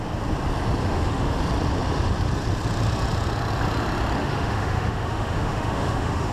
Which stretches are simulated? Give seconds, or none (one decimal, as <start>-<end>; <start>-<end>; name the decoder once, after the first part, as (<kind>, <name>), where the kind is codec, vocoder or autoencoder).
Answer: 0.8-1.4 (autoencoder, DAC-VAE); 4.2-6.3